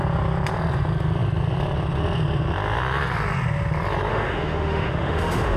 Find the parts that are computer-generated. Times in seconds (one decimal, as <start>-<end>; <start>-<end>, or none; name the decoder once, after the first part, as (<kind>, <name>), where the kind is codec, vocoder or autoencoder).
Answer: 4.1-5.6 (autoencoder, DAC-VAE)